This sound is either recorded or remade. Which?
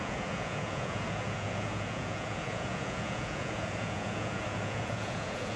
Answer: remade